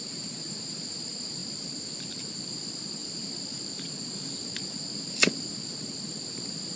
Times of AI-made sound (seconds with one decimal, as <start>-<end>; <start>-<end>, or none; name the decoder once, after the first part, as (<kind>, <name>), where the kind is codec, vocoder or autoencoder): none